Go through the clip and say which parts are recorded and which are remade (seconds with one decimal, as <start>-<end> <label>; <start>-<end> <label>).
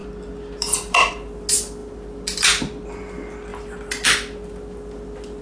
0.0-5.4 recorded